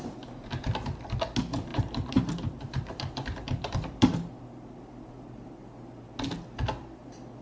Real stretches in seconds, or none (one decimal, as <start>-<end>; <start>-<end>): 0.0-1.7; 6.1-7.4